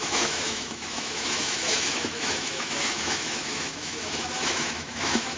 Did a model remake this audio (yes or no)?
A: yes